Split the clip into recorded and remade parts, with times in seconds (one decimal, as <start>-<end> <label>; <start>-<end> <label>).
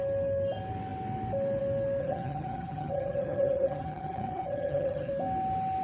0.0-2.0 recorded; 2.0-5.1 remade; 5.1-5.8 recorded